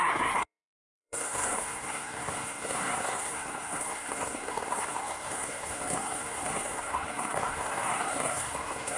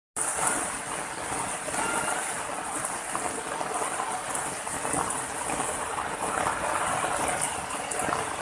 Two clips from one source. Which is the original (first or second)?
second